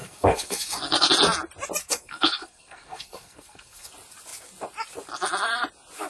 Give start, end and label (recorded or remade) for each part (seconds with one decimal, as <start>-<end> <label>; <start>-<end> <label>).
0.0-1.1 remade; 1.1-1.8 recorded; 1.8-3.9 remade; 3.9-6.1 recorded

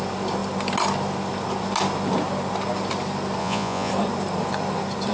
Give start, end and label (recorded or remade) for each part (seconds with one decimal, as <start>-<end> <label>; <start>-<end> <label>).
0.0-3.4 recorded; 3.4-3.9 remade; 3.9-5.1 recorded